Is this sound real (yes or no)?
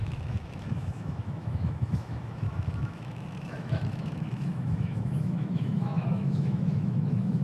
no